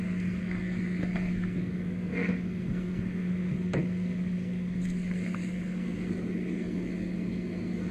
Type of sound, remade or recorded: remade